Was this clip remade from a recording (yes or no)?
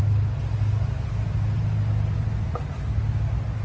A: no